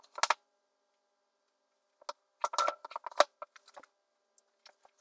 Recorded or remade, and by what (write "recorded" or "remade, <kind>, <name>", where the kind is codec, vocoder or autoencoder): recorded